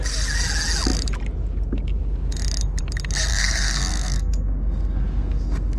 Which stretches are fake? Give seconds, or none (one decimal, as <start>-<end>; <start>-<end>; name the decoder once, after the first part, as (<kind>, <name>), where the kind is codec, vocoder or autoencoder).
3.3-5.8 (codec, SNAC)